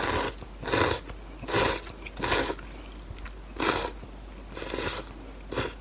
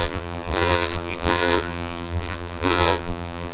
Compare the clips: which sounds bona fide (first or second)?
first